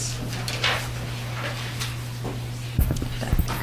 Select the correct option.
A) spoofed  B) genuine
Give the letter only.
B